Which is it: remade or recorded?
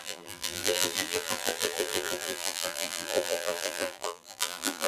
remade